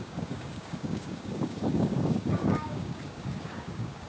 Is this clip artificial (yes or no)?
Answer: yes